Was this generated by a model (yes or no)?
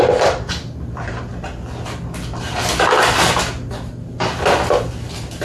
no